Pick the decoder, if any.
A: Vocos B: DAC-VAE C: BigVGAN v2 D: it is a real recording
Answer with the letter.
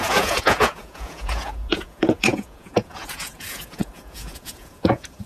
A